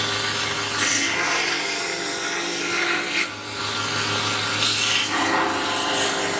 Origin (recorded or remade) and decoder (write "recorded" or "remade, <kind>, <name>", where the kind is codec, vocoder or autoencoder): recorded